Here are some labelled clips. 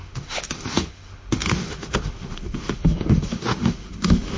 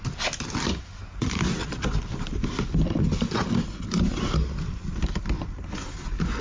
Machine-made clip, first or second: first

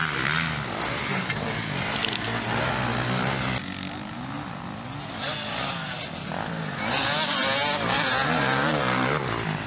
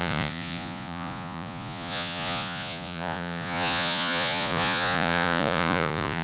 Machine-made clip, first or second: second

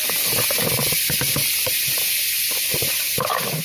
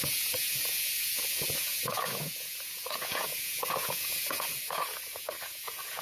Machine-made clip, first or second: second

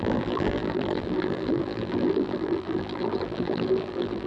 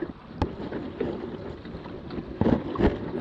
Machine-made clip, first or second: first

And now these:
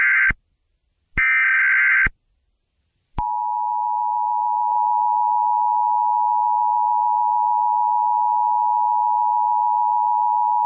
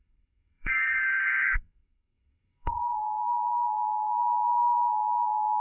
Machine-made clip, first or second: second